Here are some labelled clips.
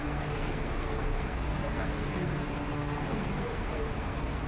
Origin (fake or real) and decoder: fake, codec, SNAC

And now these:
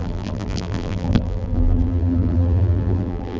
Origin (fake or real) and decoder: fake, vocoder, BigVGAN v2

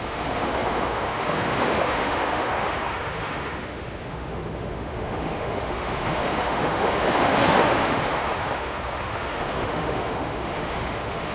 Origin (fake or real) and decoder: fake, autoencoder, DAC-VAE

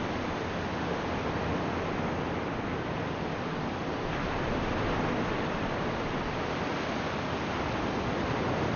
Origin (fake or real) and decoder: real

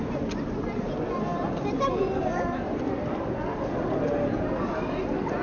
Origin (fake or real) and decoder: real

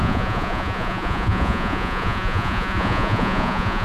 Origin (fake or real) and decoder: fake, vocoder, Vocos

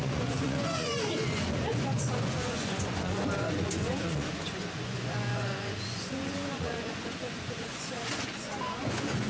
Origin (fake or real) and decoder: fake, vocoder, Vocos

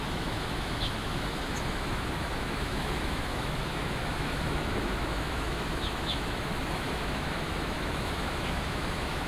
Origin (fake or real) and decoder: fake, autoencoder, DAC-VAE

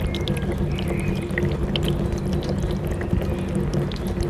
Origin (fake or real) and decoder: real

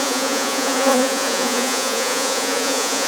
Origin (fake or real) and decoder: fake, vocoder, Vocos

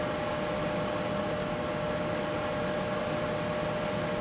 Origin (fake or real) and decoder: real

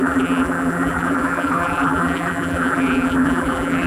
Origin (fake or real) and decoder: fake, vocoder, BigVGAN v2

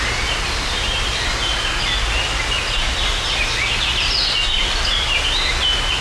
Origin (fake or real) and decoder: real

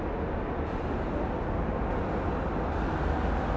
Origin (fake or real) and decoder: real